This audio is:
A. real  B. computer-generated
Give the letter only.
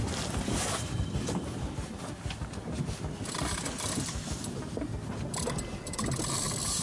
A